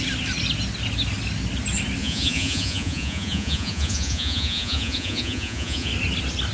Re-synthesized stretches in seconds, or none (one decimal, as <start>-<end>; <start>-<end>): 2.0-5.9